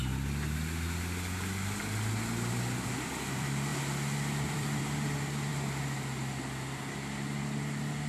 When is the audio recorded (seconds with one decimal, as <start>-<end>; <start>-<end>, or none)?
0.0-2.9; 5.5-7.4